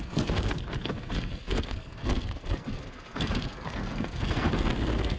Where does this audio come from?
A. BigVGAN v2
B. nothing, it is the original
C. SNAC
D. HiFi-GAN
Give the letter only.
C